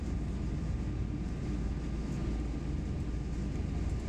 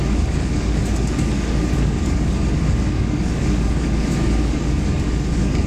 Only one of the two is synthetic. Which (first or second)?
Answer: second